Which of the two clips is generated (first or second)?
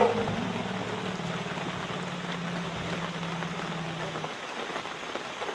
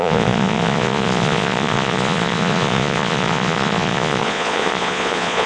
second